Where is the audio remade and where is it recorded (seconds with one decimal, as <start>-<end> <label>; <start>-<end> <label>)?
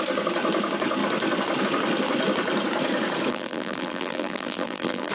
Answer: 0.0-3.3 recorded; 3.3-5.1 remade